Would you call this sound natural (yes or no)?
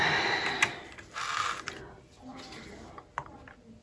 yes